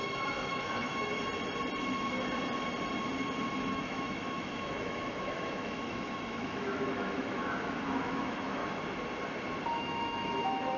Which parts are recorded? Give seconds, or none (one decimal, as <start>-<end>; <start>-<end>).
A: 1.1-3.7; 8.6-9.8